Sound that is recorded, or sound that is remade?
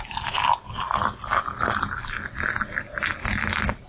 recorded